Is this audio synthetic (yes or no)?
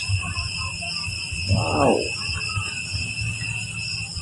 no